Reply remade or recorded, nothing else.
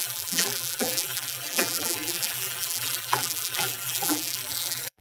remade